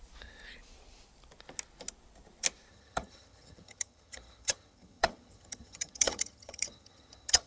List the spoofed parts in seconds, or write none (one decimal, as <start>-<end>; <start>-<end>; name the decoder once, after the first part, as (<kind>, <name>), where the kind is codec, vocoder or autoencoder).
2.7-7.5 (vocoder, HiFi-GAN)